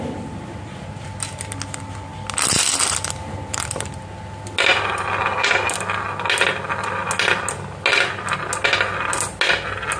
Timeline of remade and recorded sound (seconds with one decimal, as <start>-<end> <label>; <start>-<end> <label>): 0.0-10.0 recorded